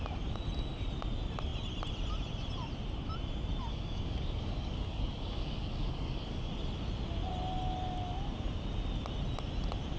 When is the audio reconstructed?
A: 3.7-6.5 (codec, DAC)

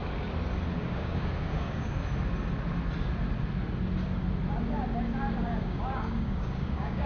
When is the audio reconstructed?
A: 0.8-2.0 (codec, DAC); 5.3-7.1